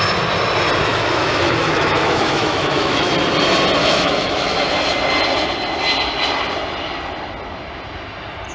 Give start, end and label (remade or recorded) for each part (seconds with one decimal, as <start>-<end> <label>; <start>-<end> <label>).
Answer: 0.0-0.9 recorded; 0.9-3.1 remade; 3.1-3.8 recorded; 3.8-4.6 remade; 4.6-8.5 recorded